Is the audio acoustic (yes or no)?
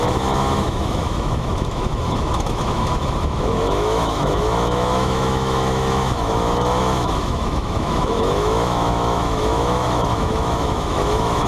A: no